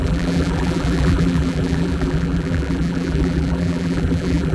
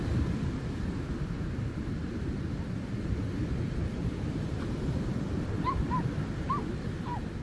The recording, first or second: second